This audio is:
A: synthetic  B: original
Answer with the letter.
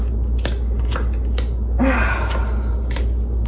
B